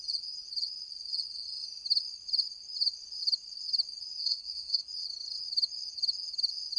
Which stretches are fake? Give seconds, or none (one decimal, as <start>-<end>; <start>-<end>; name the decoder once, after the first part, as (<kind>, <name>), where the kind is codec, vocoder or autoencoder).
4.2-4.8 (codec, SNAC)